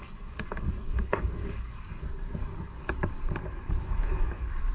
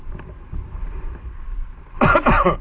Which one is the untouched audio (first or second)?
second